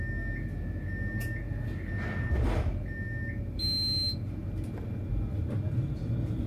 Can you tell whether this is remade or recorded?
recorded